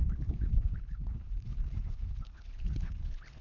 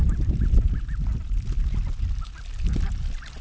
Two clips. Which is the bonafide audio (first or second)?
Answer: second